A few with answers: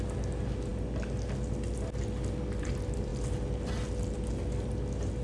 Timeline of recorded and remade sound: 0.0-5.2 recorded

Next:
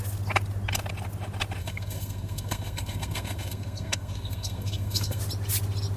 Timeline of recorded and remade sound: 0.0-1.6 recorded; 1.6-5.2 remade; 5.2-6.0 recorded

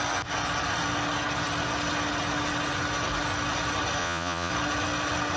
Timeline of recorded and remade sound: 0.0-4.0 recorded; 4.0-4.5 remade; 4.5-5.4 recorded

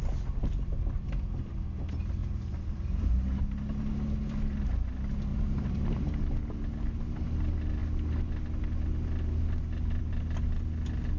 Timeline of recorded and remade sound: 0.0-2.2 recorded; 2.2-3.1 remade; 3.1-5.3 recorded; 5.3-6.2 remade; 6.2-11.2 recorded